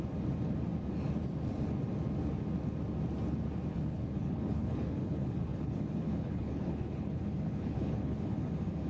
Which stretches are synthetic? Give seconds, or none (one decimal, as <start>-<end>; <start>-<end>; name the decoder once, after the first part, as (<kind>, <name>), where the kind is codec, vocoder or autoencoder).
3.7-8.5 (codec, HILCodec)